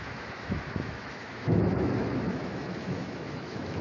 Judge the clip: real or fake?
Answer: fake